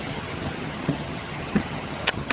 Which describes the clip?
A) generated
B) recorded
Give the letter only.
A